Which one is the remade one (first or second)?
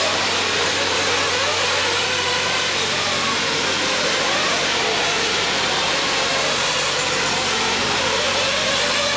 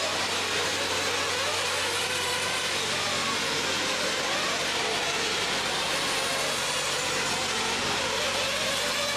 first